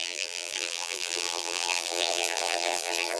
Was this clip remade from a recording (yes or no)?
yes